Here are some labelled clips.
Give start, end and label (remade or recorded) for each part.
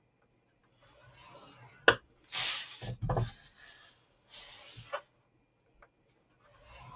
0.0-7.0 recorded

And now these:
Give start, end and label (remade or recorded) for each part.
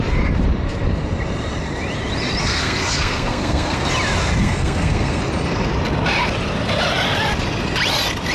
0.0-2.4 recorded; 2.4-3.8 remade; 3.8-4.4 recorded; 4.4-5.2 remade; 5.2-8.3 recorded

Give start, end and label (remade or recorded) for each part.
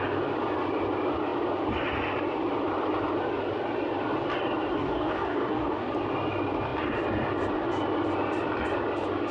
0.0-4.7 recorded; 4.7-5.9 remade; 5.9-9.3 recorded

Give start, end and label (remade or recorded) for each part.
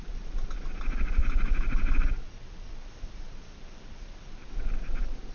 0.0-1.2 remade; 1.2-2.7 recorded; 2.7-5.3 remade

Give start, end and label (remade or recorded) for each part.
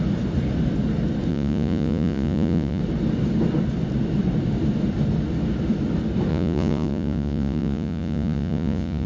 0.0-1.3 recorded; 1.3-2.8 remade; 2.8-6.3 recorded; 6.3-9.1 remade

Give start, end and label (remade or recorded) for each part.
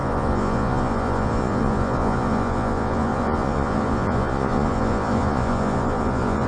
0.0-6.5 remade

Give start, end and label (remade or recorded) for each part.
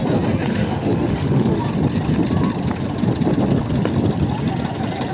0.0-0.5 recorded; 0.5-1.6 remade; 1.6-5.1 recorded